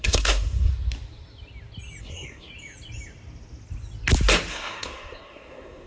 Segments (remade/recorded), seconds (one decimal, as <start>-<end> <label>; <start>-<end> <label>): 0.0-0.7 remade; 0.7-2.0 recorded; 2.0-2.5 remade; 2.5-4.5 recorded; 4.5-5.9 remade